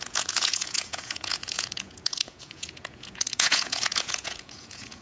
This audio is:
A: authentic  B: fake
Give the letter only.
B